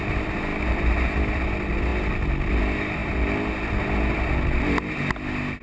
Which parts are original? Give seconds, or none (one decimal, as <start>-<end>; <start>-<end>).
0.0-5.6

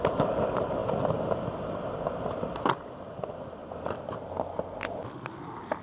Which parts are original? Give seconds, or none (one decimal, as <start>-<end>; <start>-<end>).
0.0-5.8

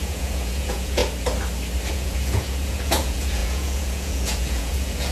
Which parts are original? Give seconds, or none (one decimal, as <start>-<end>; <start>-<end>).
1.0-1.9